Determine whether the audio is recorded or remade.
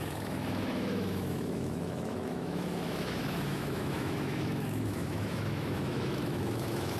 remade